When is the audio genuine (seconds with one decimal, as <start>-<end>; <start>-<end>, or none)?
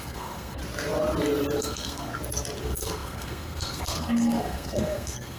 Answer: 0.6-1.6; 2.1-2.6